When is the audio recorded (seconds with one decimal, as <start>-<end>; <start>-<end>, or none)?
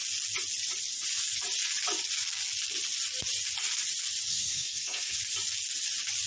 0.0-4.3; 5.2-6.3